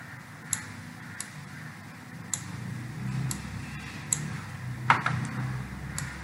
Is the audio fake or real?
real